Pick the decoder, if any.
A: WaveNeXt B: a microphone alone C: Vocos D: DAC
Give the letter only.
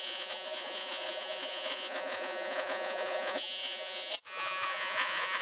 C